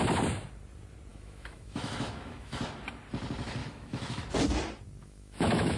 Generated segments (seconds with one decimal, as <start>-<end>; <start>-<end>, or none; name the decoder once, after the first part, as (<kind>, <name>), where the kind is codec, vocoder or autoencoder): 1.1-2.6 (autoencoder, DAC-VAE); 3.6-4.2; 5.0-5.8